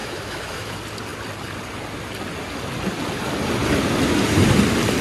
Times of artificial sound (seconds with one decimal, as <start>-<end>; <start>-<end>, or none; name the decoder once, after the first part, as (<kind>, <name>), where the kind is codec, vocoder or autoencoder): 0.0-0.7 (autoencoder, DAC-VAE)